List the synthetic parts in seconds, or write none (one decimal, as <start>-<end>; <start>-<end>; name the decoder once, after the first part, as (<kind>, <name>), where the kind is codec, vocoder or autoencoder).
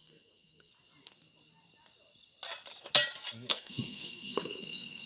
0.0-0.7 (codec, SNAC); 3.5-5.1